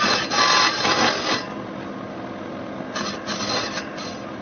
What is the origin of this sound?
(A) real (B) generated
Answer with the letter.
A